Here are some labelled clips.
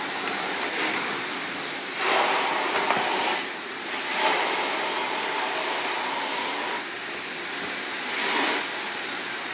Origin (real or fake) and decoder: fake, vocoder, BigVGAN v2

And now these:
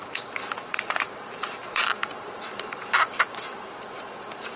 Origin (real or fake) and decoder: fake, vocoder, BigVGAN v2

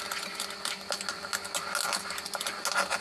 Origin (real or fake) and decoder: real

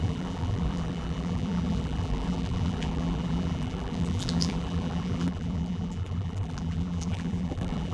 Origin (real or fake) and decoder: fake, vocoder, BigVGAN v2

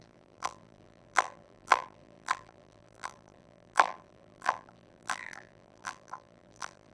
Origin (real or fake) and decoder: fake, vocoder, BigVGAN v2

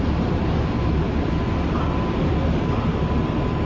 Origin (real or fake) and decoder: fake, vocoder, BigVGAN v2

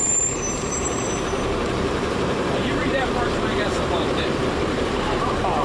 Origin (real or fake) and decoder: fake, vocoder, BigVGAN v2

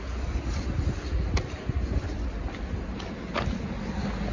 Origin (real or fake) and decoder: real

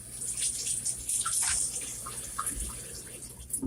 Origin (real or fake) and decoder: fake, vocoder, BigVGAN v2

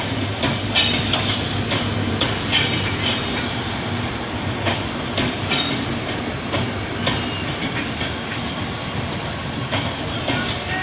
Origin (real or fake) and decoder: fake, vocoder, BigVGAN v2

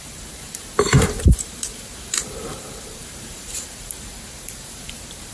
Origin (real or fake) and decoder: fake, vocoder, BigVGAN v2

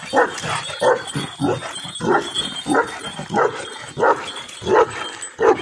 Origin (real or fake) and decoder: real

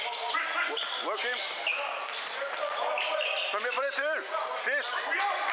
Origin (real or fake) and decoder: fake, vocoder, BigVGAN v2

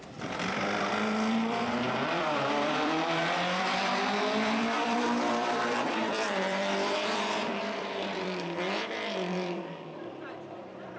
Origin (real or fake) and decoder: fake, vocoder, BigVGAN v2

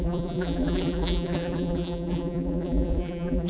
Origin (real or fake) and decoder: fake, vocoder, BigVGAN v2